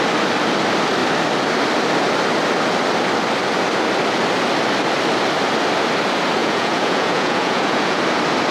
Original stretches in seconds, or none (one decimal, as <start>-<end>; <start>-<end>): 0.0-6.4; 8.0-8.5

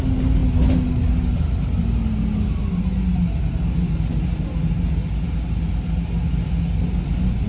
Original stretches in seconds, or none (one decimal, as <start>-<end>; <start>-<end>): 0.0-7.5